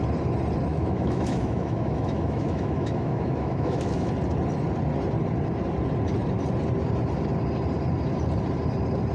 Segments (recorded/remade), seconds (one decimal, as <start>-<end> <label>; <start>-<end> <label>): 0.0-0.7 recorded; 0.7-4.1 remade; 4.1-9.1 recorded